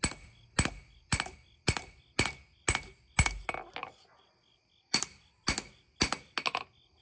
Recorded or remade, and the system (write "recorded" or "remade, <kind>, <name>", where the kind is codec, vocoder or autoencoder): recorded